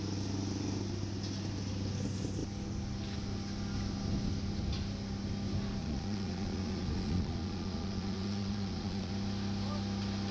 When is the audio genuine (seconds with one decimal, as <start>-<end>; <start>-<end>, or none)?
0.0-5.8; 9.1-10.3